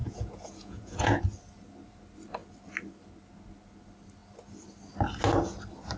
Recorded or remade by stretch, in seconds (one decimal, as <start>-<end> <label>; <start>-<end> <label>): 0.0-1.2 remade; 1.2-6.0 recorded

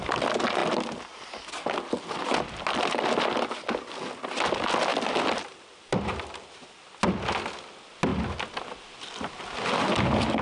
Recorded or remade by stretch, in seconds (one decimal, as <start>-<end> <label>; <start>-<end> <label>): 0.0-4.9 recorded; 4.9-6.0 remade; 6.0-10.4 recorded

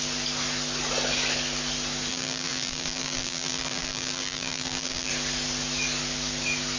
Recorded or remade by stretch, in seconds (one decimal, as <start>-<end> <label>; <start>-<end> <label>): 0.0-2.1 recorded; 2.1-5.1 remade; 5.1-6.8 recorded

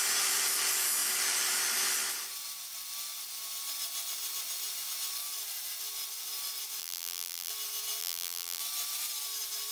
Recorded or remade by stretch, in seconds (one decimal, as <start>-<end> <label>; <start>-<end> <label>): 0.0-6.8 recorded; 6.8-7.5 remade; 7.5-8.0 recorded; 8.0-8.6 remade; 8.6-9.7 recorded

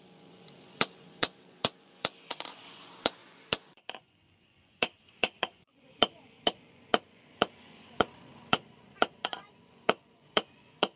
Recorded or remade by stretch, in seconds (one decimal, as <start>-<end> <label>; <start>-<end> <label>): 0.0-11.0 remade

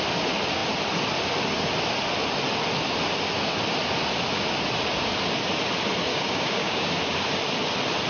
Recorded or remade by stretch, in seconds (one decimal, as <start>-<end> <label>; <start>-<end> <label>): 0.0-6.1 recorded; 6.1-6.9 remade; 6.9-8.1 recorded

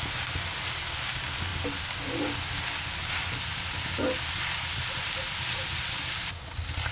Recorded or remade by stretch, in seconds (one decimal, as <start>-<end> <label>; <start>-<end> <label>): 0.0-6.9 recorded